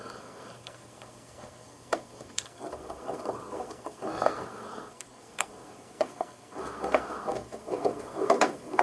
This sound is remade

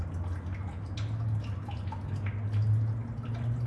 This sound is recorded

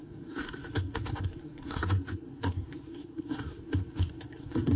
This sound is remade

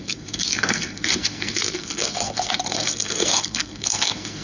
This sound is remade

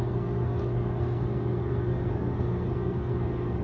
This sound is remade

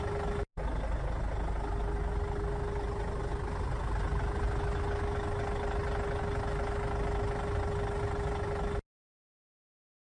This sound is recorded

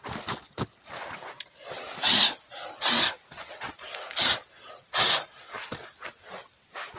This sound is recorded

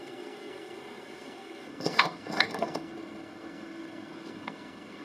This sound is remade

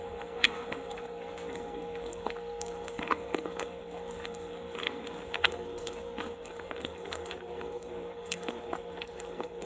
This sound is remade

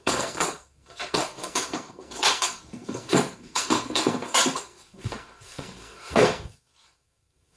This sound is remade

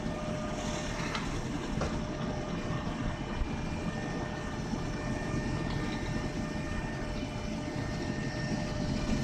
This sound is recorded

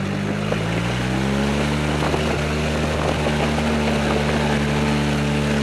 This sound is recorded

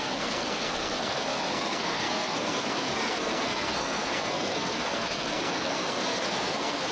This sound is remade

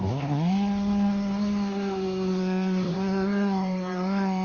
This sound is remade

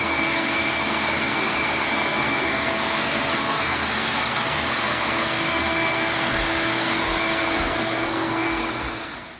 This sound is remade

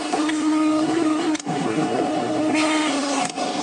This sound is remade